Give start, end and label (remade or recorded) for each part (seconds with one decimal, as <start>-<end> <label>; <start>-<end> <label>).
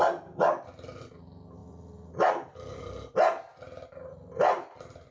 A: 0.0-5.1 recorded